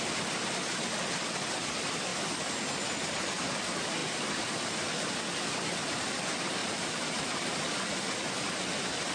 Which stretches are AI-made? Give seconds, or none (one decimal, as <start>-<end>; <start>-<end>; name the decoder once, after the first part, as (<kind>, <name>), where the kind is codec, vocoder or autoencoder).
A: 4.0-5.1 (vocoder, BigVGAN v2); 6.6-7.5

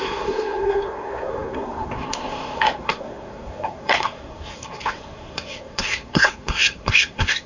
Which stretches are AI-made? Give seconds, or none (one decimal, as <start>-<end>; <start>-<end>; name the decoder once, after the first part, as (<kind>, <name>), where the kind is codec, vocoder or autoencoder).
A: 0.0-7.5 (codec, SNAC)

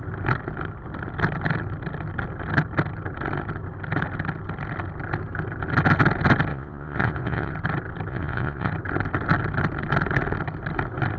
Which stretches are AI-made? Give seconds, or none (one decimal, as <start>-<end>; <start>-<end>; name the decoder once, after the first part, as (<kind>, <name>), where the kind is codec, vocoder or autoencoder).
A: 6.5-7.5 (vocoder, Vocos); 8.1-8.7

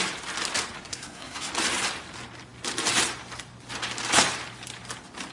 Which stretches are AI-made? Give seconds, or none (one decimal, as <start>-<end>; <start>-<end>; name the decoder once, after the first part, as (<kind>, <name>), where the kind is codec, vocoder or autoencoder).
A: 0.9-1.5 (codec, SNAC)

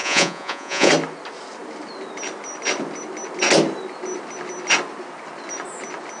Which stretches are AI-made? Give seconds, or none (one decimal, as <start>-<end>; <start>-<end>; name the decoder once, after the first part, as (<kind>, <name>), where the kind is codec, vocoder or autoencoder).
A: 0.0-0.9 (vocoder, Vocos)

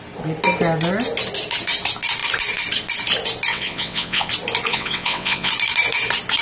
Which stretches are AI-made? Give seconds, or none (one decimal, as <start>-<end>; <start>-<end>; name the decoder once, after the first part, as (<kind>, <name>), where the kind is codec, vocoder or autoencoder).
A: 3.5-4.3 (vocoder, WaveNeXt); 4.7-5.5

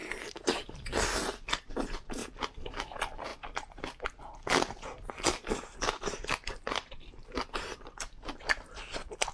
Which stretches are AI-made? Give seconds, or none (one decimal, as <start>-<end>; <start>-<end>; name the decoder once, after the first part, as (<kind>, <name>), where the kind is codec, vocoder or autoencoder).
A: 0.0-3.3 (vocoder, BigVGAN v2); 4.2-9.3

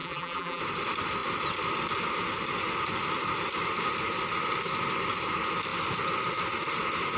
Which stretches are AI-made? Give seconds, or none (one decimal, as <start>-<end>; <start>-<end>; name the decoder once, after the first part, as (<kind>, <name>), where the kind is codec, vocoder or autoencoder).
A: 0.0-0.6 (vocoder, BigVGAN v2)